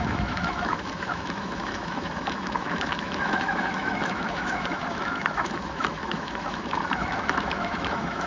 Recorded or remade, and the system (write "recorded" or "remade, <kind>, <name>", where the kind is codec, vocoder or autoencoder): remade, autoencoder, DAC-VAE